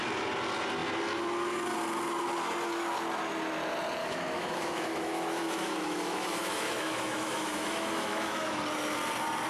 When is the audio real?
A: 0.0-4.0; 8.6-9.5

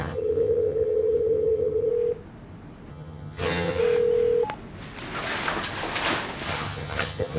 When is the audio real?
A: 1.9-2.9; 3.8-6.5

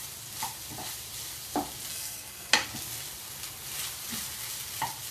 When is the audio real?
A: 0.0-1.9; 2.5-5.1

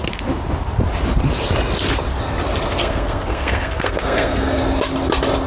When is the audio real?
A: 0.0-2.8; 4.6-5.5

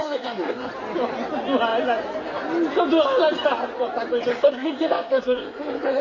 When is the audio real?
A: 0.7-4.3

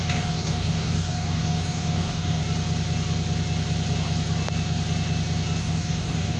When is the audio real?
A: 2.4-5.6